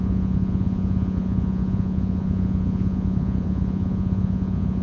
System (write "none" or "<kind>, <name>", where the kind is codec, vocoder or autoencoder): vocoder, Vocos